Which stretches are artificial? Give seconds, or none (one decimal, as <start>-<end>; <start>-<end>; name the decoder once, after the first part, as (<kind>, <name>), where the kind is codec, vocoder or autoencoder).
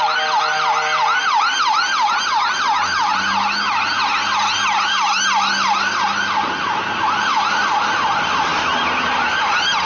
none